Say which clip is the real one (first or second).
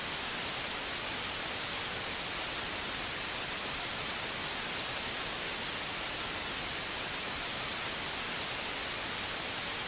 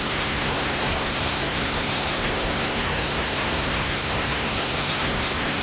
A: first